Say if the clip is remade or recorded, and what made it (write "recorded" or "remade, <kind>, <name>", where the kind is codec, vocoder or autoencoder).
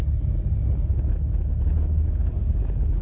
recorded